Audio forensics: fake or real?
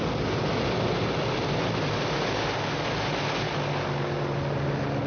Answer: real